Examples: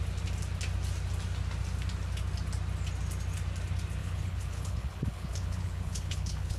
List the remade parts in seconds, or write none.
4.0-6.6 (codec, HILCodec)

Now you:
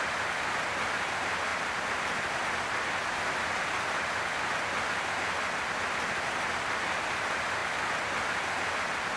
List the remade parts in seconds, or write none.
1.5-2.4 (vocoder, BigVGAN v2)

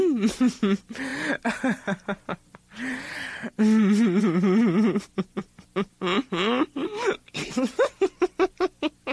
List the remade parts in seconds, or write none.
none

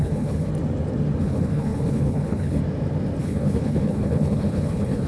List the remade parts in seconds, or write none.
0.0-0.5 (codec, HILCodec); 1.2-2.6; 3.2-5.1

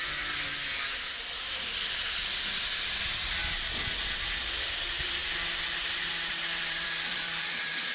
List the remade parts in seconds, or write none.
5.2-7.9 (vocoder, BigVGAN v2)

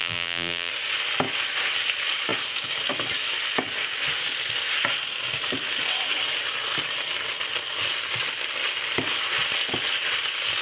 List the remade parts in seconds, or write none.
0.0-0.7 (vocoder, BigVGAN v2)